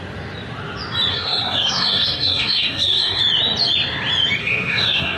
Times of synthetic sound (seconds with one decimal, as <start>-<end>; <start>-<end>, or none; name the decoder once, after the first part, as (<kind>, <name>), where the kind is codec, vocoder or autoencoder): 1.1-3.2 (codec, SNAC); 4.4-5.2